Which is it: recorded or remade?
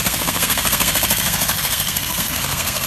remade